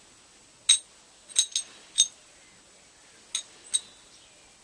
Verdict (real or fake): real